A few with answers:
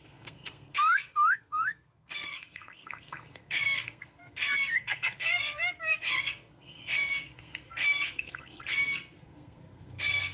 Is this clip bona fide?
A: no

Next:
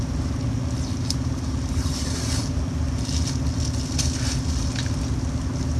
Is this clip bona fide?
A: yes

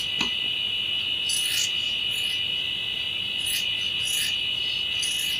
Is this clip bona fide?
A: yes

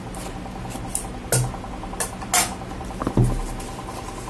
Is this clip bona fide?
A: yes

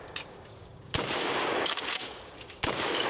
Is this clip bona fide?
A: no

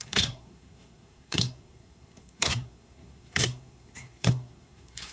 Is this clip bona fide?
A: no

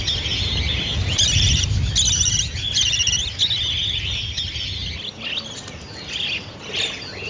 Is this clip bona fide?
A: yes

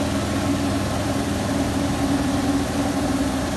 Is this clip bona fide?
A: yes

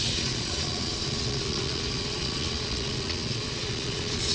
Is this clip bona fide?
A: no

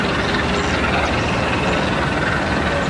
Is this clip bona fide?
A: yes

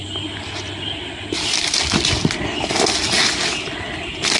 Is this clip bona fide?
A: yes